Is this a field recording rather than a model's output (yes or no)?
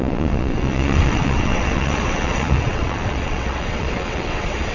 no